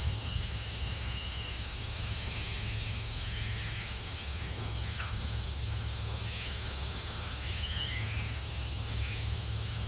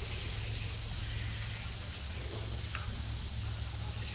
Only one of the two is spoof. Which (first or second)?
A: first